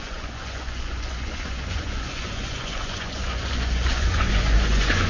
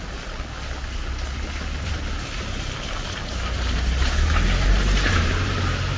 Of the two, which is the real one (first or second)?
second